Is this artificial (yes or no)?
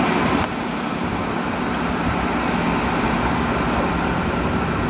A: no